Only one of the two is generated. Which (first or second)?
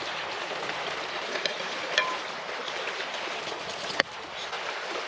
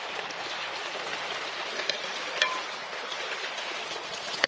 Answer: second